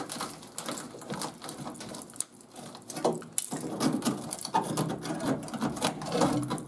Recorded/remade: recorded